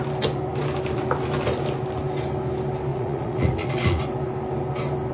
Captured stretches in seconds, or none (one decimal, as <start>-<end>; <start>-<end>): 0.0-2.9; 4.0-5.1